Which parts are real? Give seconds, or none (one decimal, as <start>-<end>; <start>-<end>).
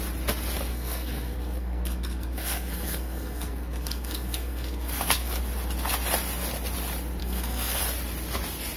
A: 0.0-0.7; 5.4-7.2; 7.8-8.8